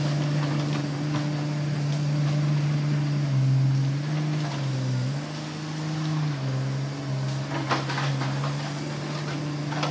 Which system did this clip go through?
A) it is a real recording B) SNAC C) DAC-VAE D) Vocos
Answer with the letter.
A